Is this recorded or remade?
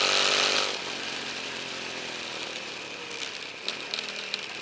recorded